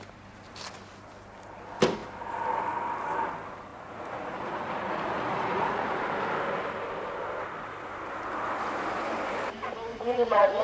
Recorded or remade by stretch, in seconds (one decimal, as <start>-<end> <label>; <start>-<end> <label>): 0.0-3.7 recorded; 3.7-6.0 remade; 6.0-9.9 recorded; 9.9-10.6 remade